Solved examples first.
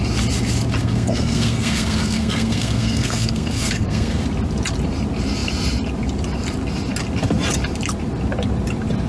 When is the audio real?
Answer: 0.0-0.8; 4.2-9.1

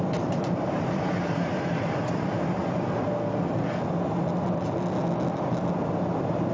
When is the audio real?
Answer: 2.6-6.1